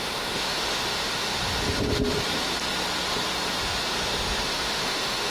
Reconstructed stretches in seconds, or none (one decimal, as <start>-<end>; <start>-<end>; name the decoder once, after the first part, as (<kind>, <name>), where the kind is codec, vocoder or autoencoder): 0.0-1.4 (autoencoder, DAC-VAE); 3.6-5.3